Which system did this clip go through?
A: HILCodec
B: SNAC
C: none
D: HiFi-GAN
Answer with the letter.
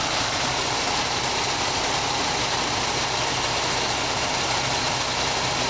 C